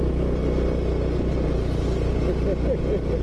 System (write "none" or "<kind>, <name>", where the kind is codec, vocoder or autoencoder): none